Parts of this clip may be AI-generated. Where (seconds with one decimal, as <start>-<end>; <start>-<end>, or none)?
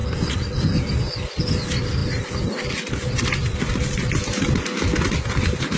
none